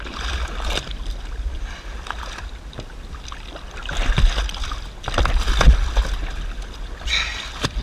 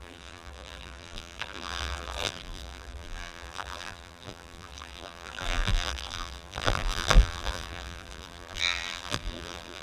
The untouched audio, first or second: first